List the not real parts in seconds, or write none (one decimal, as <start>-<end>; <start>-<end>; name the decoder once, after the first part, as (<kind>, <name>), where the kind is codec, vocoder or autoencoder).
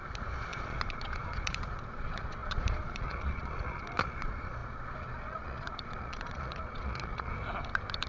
0.0-7.3 (vocoder, Vocos)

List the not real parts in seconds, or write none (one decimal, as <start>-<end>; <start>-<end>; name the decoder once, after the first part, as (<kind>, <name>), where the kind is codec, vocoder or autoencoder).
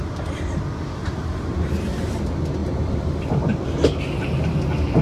1.0-2.1 (vocoder, BigVGAN v2); 2.6-4.0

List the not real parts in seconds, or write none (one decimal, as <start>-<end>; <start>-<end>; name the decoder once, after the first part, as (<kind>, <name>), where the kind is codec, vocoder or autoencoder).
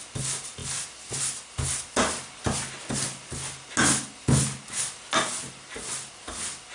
none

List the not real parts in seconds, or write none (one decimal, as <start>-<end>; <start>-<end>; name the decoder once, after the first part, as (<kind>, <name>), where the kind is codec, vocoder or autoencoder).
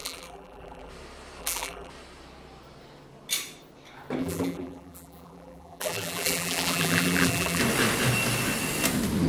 0.0-0.9 (vocoder, BigVGAN v2); 1.4-1.9; 4.2-7.6